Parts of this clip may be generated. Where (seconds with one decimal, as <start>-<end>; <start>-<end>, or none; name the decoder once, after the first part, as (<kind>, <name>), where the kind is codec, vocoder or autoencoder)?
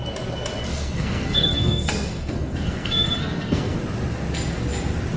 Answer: 0.7-3.8 (codec, SNAC)